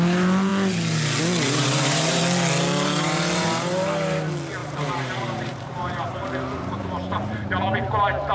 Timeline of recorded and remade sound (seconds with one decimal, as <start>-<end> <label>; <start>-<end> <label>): 0.0-1.6 recorded; 1.6-2.2 remade; 2.2-4.6 recorded; 4.6-7.3 remade; 7.3-8.3 recorded